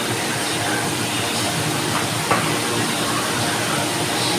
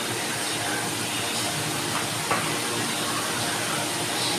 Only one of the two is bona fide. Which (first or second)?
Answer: second